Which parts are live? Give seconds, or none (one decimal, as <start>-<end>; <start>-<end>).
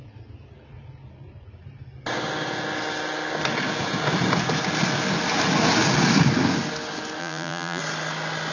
0.0-7.2; 7.8-8.5